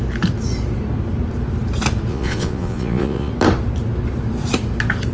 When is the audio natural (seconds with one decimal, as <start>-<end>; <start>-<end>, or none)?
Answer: 0.0-2.1; 3.3-5.1